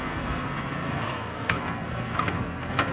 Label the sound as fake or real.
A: fake